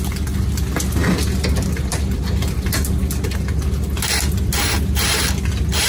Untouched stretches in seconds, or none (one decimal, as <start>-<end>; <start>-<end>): 0.0-5.9